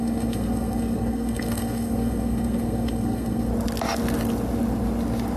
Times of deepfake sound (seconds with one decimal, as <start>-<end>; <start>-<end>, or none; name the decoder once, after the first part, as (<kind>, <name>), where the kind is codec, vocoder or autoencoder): 0.0-3.5 (codec, SNAC)